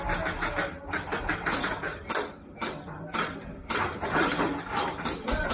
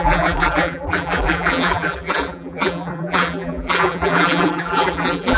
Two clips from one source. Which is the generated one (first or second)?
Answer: second